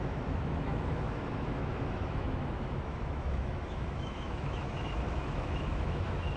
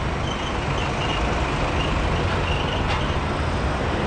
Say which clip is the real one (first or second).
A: second